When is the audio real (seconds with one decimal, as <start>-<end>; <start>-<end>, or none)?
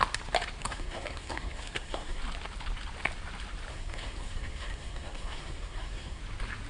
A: 0.0-0.6; 2.2-3.7; 6.2-6.7